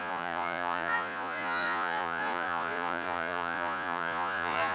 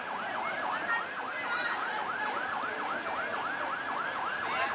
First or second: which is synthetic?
first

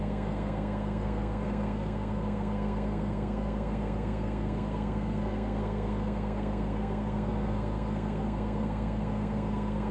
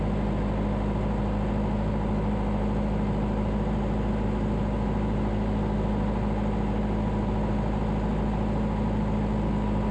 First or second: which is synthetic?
first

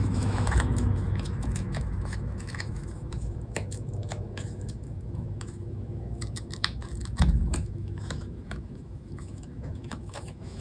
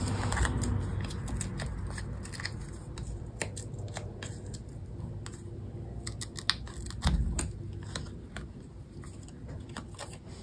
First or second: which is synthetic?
first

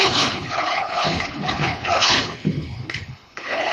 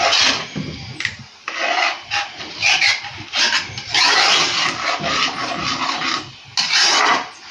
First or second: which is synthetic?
first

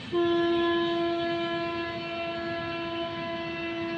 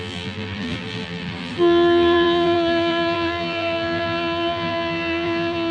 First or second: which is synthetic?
second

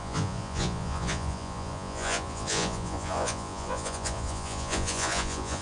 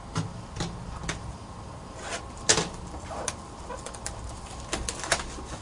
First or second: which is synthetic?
first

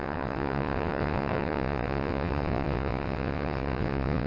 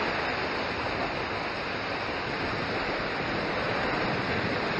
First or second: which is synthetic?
first